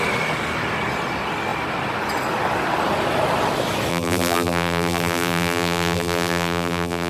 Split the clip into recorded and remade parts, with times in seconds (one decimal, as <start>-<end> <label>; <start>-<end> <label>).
0.0-3.9 recorded; 3.9-7.1 remade